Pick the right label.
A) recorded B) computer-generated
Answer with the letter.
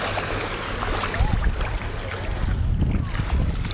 A